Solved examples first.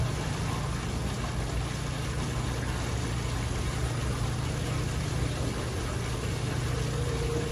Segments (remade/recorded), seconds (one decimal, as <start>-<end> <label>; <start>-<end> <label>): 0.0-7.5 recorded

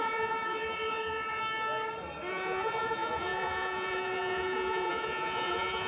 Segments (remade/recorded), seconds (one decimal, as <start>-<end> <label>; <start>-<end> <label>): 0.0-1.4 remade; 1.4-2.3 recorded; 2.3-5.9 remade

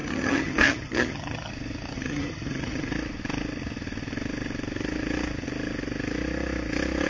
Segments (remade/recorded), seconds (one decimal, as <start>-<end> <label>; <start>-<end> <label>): 0.0-1.5 remade; 1.5-1.9 recorded; 1.9-2.9 remade; 2.9-7.1 recorded

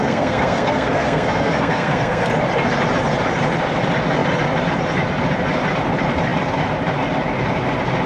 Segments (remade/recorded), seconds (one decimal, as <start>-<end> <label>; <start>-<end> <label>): 0.0-2.3 remade; 2.3-8.1 recorded

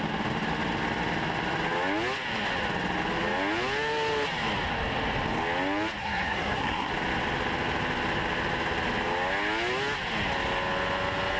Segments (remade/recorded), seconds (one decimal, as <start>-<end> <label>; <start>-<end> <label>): 0.0-6.0 recorded; 6.0-6.9 remade; 6.9-11.4 recorded

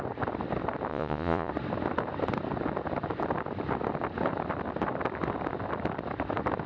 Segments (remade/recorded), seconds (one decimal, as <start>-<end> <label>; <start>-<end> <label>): 0.0-0.9 recorded; 0.9-1.5 remade; 1.5-6.7 recorded

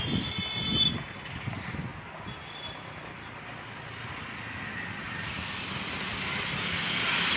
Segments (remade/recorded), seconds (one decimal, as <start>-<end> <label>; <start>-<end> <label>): 0.0-7.4 recorded